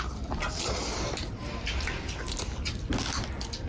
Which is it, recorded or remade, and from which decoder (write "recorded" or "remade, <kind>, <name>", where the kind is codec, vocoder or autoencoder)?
recorded